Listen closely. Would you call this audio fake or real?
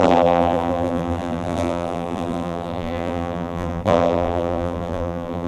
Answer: fake